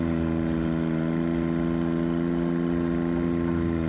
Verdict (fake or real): real